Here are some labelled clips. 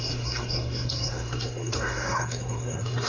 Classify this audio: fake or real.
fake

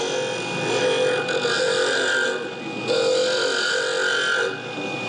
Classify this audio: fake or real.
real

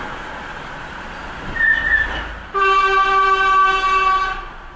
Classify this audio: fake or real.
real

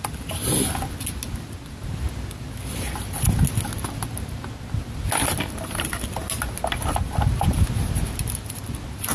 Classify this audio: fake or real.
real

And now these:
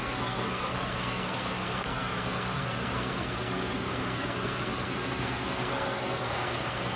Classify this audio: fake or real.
fake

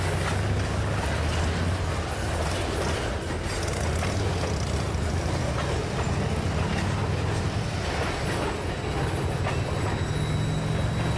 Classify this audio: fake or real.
real